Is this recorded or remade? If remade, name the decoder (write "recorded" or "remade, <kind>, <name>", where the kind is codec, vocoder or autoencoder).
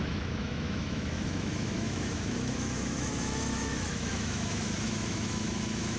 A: remade, autoencoder, DAC-VAE